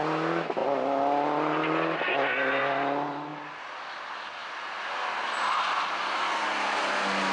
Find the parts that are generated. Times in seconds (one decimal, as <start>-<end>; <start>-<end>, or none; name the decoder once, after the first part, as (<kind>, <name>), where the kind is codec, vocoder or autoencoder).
none